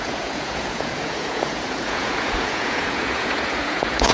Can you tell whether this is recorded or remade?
remade